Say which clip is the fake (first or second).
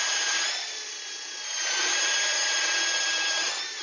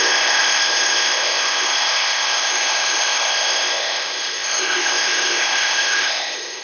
second